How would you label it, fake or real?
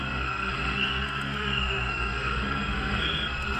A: fake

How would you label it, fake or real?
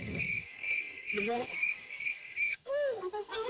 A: fake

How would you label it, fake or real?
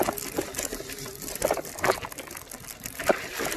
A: real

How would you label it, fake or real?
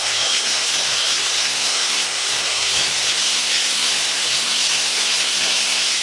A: fake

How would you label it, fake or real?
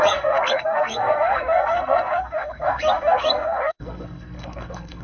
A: fake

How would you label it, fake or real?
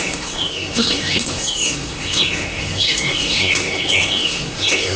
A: fake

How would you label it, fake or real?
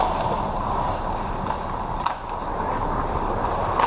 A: real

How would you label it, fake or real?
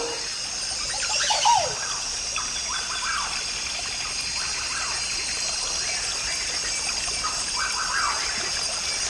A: real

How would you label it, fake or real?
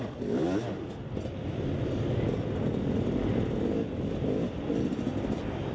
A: real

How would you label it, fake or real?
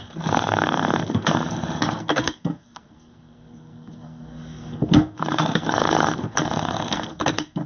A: fake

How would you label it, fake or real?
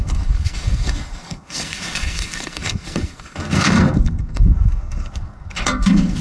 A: fake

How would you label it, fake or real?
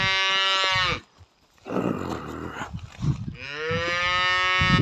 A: real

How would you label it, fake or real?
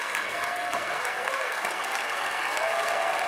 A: fake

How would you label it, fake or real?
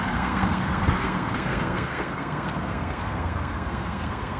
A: fake